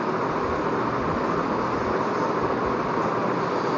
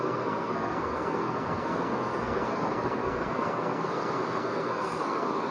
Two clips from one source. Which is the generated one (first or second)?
second